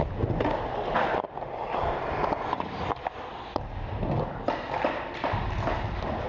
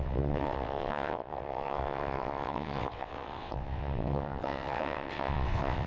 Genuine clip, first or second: first